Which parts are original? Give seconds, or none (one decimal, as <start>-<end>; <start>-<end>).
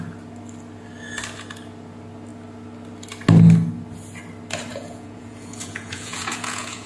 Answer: 0.0-4.7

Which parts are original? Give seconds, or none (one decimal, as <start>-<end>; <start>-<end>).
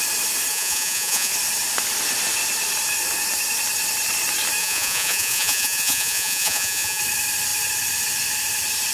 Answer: 0.0-0.5; 1.3-4.6; 7.0-8.9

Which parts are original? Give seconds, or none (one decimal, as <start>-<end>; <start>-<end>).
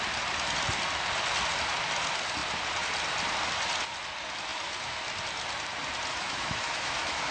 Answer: 0.0-6.1